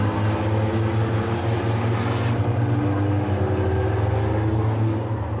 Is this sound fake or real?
real